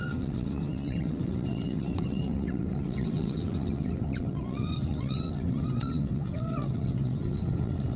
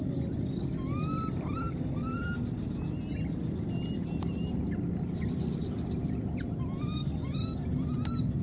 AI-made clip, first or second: first